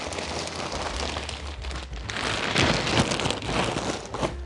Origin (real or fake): real